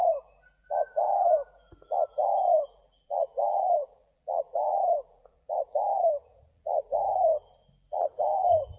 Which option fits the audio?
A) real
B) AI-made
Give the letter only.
B